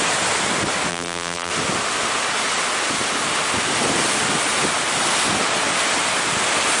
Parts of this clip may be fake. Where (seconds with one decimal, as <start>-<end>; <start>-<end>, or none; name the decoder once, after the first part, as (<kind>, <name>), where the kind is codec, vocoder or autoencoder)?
0.9-1.5 (vocoder, BigVGAN v2)